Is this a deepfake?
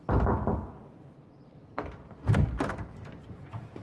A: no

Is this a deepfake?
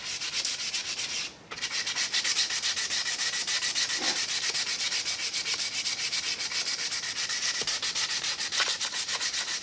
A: no